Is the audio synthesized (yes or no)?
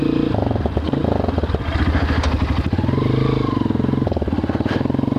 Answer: no